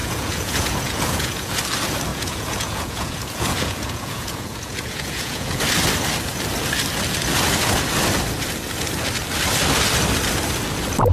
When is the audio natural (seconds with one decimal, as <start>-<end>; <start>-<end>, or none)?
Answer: 1.5-2.1; 5.6-11.1